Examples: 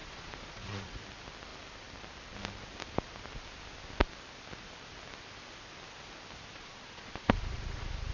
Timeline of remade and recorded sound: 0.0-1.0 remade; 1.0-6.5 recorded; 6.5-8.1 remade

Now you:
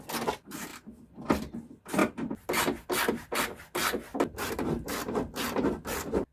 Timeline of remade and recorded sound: 0.0-0.7 recorded; 0.7-1.5 remade; 1.5-4.1 recorded; 4.1-6.3 remade

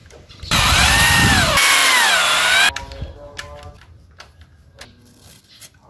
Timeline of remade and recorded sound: 0.0-5.9 recorded